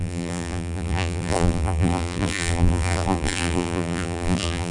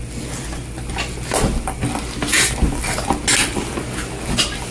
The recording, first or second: second